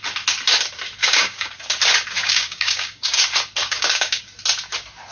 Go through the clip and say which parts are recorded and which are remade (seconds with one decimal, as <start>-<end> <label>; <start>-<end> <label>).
0.0-1.0 recorded; 1.0-1.5 remade; 1.5-2.2 recorded; 2.2-3.2 remade; 3.2-3.6 recorded; 3.6-4.2 remade; 4.2-5.1 recorded